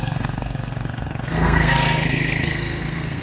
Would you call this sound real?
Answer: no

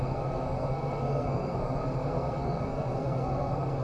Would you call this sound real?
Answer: no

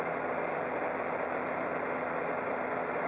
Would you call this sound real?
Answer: yes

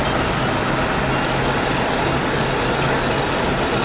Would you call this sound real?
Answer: yes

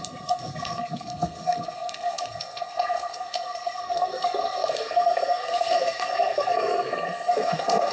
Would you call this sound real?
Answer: no